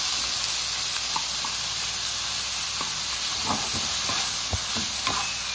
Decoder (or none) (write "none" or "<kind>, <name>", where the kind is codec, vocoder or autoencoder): none